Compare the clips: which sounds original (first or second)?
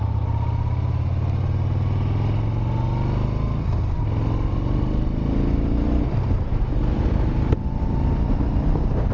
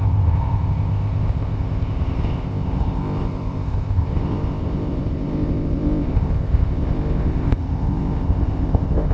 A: first